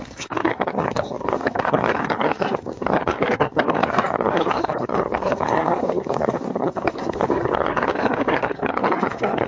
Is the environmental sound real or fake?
fake